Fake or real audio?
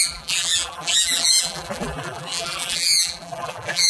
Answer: fake